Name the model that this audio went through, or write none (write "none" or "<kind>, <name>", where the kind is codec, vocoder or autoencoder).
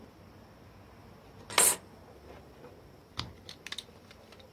none